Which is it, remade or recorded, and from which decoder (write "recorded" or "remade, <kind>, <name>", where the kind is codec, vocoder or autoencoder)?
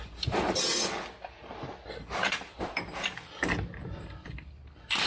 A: recorded